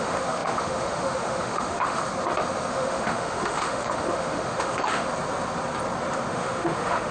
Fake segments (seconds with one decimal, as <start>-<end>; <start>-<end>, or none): 0.0-2.0; 2.7-5.1; 6.3-7.1